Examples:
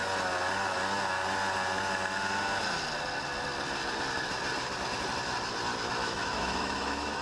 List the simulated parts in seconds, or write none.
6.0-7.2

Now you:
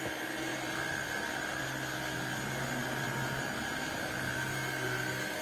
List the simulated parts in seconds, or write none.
0.5-1.6

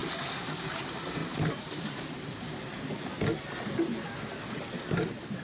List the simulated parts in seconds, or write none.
1.2-2.1

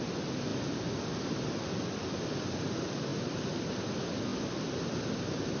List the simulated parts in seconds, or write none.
none

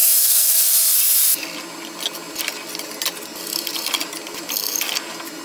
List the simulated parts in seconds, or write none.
0.0-0.7